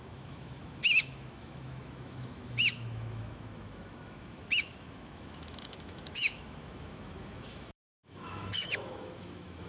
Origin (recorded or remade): remade